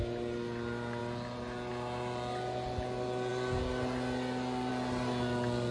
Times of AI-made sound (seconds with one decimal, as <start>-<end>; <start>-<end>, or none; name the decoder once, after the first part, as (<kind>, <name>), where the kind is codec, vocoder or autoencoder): none